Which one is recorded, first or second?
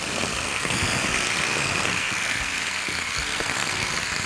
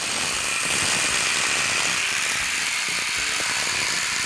second